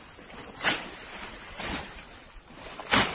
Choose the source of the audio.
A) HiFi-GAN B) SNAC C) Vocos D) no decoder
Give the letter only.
D